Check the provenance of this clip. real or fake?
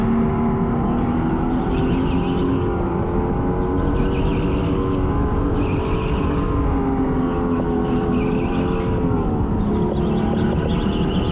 real